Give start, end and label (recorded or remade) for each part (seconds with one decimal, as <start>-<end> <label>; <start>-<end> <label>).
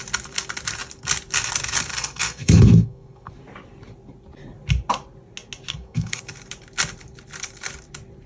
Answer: 0.0-1.9 recorded; 1.9-3.3 remade; 3.3-5.7 recorded; 5.7-6.2 remade; 6.2-8.3 recorded